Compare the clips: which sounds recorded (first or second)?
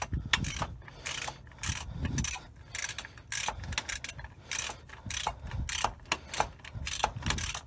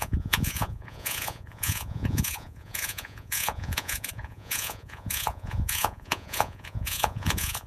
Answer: first